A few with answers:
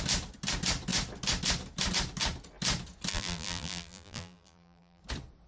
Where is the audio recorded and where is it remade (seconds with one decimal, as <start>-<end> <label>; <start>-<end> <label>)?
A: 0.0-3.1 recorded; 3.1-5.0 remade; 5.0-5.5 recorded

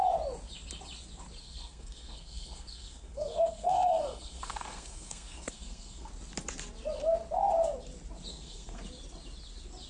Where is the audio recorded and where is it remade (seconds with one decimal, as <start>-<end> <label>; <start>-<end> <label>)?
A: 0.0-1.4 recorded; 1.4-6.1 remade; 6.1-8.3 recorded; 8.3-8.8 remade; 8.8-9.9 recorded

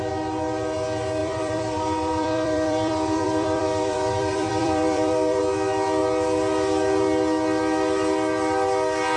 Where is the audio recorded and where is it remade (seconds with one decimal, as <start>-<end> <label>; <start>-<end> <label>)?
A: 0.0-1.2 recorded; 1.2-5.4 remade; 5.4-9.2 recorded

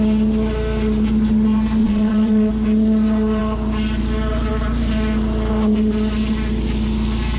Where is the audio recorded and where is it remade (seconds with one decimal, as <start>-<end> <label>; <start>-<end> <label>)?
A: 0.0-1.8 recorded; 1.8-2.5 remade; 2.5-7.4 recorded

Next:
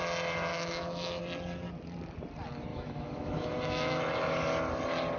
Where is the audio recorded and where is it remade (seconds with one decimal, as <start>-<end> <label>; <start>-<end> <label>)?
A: 0.0-0.5 recorded; 0.5-1.2 remade; 1.2-2.7 recorded; 2.7-4.0 remade; 4.0-5.2 recorded

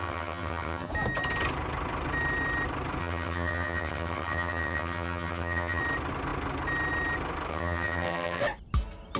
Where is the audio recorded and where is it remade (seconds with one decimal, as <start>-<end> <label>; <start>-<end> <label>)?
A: 0.0-0.9 remade; 0.9-3.0 recorded; 3.0-5.8 remade; 5.8-7.5 recorded; 7.5-8.4 remade; 8.4-9.2 recorded

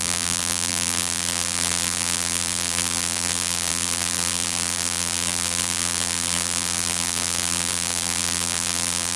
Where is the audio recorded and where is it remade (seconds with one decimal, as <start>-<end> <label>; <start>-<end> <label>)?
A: 0.0-9.2 remade

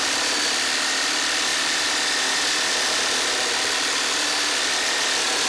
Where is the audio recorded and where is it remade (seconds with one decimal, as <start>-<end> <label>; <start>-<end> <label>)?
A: 0.0-5.5 recorded